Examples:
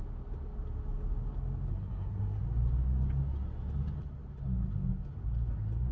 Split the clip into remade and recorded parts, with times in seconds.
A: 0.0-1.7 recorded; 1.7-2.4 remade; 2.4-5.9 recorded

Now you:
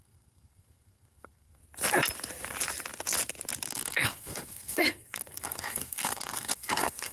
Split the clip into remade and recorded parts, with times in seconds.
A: 0.0-1.6 remade; 1.6-3.7 recorded; 3.7-7.1 remade

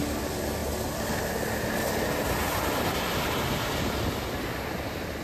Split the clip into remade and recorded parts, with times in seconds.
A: 0.0-5.2 recorded

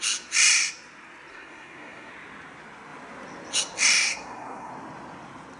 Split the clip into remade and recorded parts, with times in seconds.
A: 0.0-1.3 recorded; 1.3-2.1 remade; 2.1-4.1 recorded; 4.1-4.7 remade; 4.7-5.6 recorded

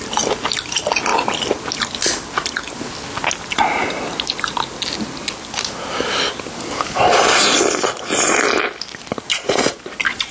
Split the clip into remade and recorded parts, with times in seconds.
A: 0.0-10.3 recorded

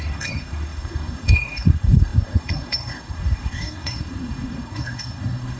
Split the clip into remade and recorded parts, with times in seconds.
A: 0.0-5.6 remade

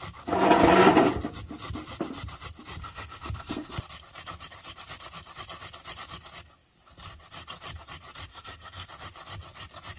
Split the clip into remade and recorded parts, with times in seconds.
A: 0.0-2.8 recorded; 2.8-3.7 remade; 3.7-8.3 recorded; 8.3-8.9 remade; 8.9-10.0 recorded

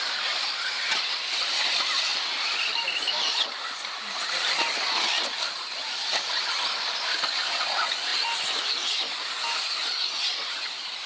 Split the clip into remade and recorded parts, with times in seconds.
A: 0.0-11.1 recorded